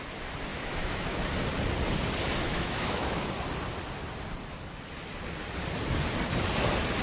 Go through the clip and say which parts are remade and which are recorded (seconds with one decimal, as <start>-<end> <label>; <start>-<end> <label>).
0.0-0.5 recorded; 0.5-1.2 remade; 1.2-2.5 recorded; 2.5-3.3 remade; 3.3-7.0 recorded